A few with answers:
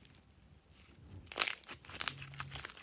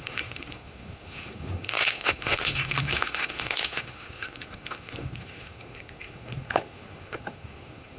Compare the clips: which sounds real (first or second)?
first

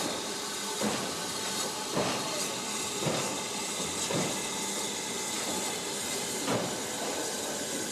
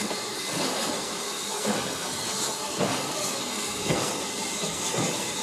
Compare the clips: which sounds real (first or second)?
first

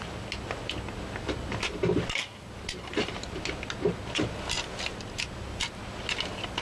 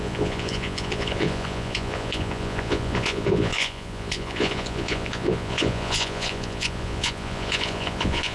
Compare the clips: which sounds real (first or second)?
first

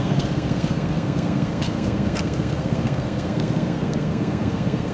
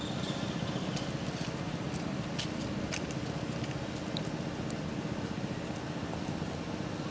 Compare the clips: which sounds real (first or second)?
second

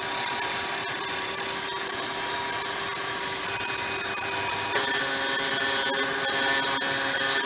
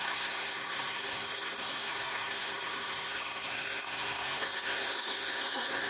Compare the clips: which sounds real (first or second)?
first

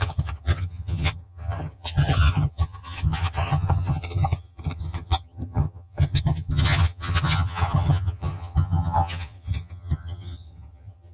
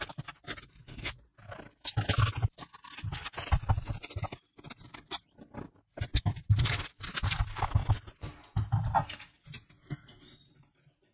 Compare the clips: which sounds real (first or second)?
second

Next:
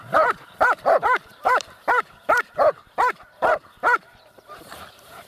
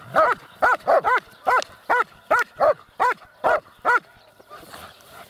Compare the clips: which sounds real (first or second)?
second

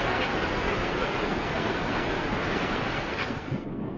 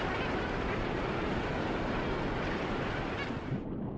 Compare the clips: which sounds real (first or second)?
second